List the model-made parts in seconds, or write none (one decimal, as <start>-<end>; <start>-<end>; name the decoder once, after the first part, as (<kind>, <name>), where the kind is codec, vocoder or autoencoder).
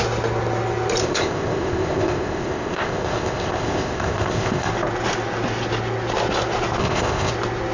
1.0-4.7 (codec, ZipCodec); 6.8-7.3